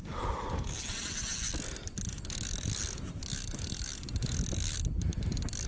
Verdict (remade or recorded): recorded